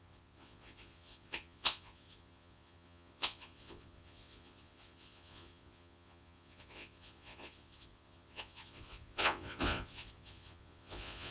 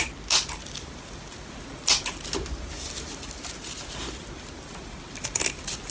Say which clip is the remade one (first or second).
first